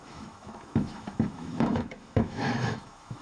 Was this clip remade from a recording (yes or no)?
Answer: yes